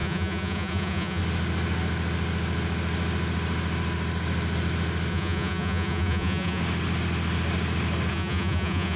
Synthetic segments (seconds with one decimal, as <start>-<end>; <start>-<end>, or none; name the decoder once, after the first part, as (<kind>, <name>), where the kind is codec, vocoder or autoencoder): 0.0-1.2 (vocoder, Vocos); 5.1-6.6; 8.1-9.0